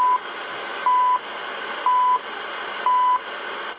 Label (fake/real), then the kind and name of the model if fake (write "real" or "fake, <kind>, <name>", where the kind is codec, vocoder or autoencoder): real